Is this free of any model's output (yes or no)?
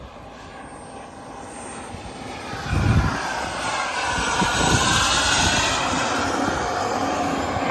yes